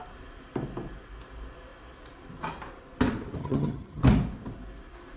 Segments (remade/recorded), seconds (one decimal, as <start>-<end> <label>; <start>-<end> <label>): 0.0-3.4 recorded; 3.4-4.0 remade; 4.0-5.2 recorded